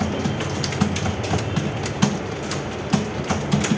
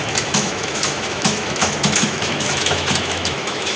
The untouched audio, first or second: first